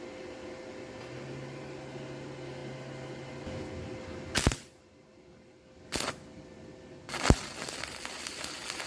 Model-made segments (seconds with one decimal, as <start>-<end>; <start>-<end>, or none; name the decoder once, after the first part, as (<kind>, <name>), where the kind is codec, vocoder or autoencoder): none